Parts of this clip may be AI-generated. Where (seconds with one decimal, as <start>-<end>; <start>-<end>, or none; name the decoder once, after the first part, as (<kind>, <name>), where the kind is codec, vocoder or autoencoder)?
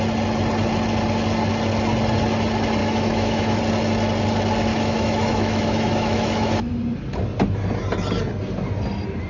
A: 2.8-3.6 (autoencoder, DAC-VAE); 4.7-6.7